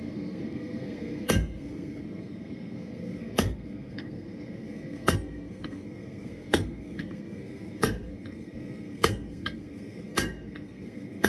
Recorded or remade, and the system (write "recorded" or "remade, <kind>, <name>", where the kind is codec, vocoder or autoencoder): remade, codec, SNAC